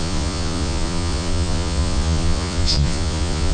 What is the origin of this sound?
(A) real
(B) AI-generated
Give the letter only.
B